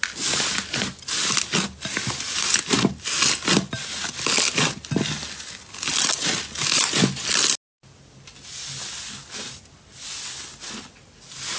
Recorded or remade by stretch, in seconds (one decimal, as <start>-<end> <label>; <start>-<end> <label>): 0.0-11.6 recorded